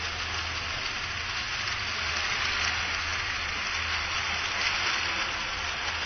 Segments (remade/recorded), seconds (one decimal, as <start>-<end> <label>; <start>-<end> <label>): 0.0-6.1 recorded

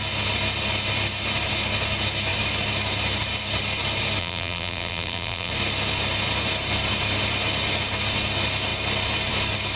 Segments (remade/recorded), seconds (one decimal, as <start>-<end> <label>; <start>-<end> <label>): 0.0-4.2 recorded; 4.2-5.5 remade; 5.5-9.8 recorded

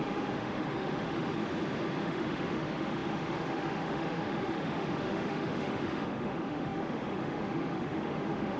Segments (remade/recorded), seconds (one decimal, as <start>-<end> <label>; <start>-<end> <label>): 0.0-1.4 remade; 1.4-2.0 recorded; 2.0-8.6 remade